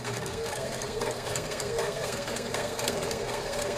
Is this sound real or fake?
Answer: fake